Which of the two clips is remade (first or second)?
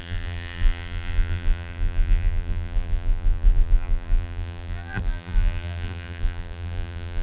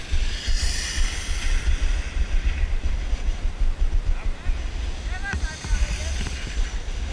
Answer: first